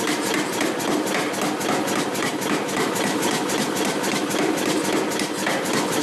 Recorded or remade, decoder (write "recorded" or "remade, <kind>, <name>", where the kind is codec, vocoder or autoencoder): recorded